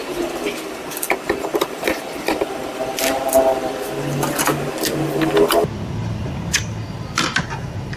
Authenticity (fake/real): real